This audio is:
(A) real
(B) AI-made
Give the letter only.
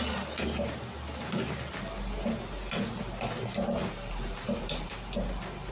A